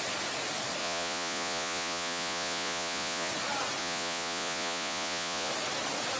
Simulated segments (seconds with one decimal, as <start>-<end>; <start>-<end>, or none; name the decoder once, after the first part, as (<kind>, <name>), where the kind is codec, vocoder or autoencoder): 0.8-3.3 (vocoder, Vocos); 3.8-5.5